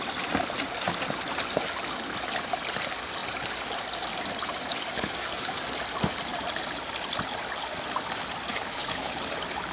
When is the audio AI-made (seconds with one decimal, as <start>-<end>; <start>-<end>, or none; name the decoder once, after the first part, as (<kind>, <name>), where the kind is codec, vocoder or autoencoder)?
4.7-5.8 (codec, DAC); 8.5-9.1